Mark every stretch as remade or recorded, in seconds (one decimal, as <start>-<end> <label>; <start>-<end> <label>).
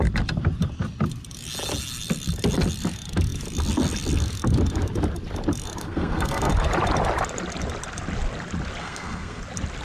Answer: 0.0-5.8 recorded; 5.8-6.5 remade; 6.5-8.8 recorded; 8.8-9.4 remade; 9.4-9.8 recorded